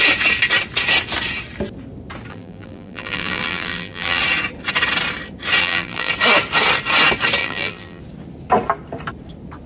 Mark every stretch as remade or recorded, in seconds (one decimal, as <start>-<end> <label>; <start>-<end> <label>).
0.0-2.3 recorded; 2.3-4.2 remade; 4.2-5.6 recorded; 5.6-6.1 remade; 6.1-7.4 recorded; 7.4-8.0 remade; 8.0-9.7 recorded